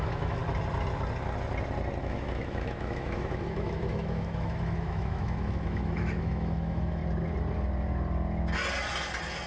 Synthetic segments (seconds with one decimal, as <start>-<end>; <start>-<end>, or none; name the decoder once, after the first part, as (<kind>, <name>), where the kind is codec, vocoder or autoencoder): 0.0-0.4 (autoencoder, DAC-VAE); 2.0-7.0